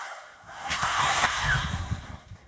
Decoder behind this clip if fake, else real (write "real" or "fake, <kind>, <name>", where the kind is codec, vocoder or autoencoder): fake, codec, SNAC